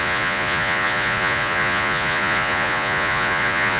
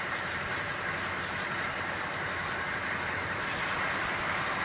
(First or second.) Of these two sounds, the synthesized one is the first